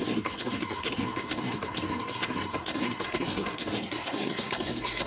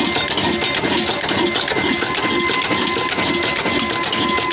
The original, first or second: second